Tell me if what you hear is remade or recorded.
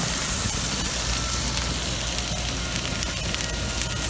recorded